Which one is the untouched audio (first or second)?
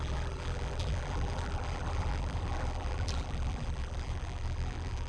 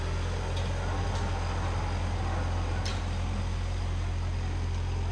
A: second